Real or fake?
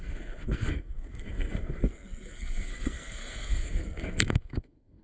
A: fake